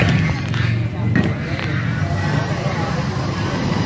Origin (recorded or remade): recorded